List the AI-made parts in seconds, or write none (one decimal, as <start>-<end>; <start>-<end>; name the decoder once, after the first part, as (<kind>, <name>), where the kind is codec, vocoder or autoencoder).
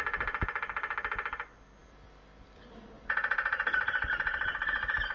none